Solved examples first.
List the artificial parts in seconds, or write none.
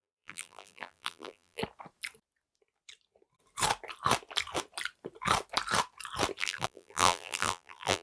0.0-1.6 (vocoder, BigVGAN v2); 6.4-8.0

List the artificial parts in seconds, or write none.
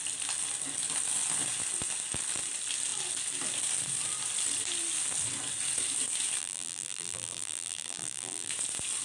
6.4-8.5 (vocoder, BigVGAN v2)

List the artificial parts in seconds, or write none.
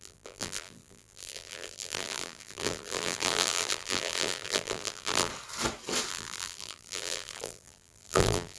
0.0-5.3 (vocoder, BigVGAN v2); 6.1-8.6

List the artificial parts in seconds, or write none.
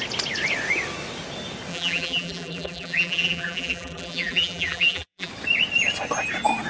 1.7-5.3 (vocoder, BigVGAN v2)